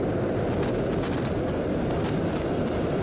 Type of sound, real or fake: real